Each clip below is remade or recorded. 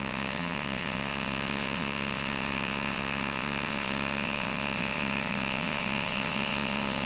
remade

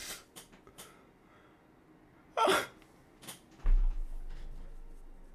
recorded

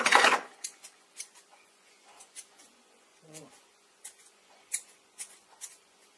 remade